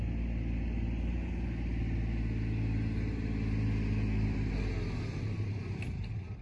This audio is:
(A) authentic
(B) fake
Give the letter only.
A